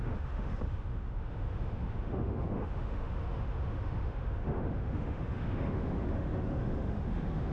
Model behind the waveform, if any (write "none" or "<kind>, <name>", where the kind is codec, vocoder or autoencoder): autoencoder, DAC-VAE